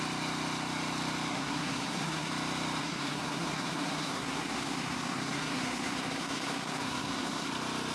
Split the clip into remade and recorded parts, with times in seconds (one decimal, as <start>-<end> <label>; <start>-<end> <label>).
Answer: 0.0-1.3 recorded; 1.3-2.3 remade; 2.3-2.8 recorded; 2.8-7.5 remade; 7.5-7.9 recorded